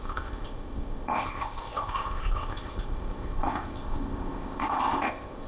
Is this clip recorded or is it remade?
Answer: remade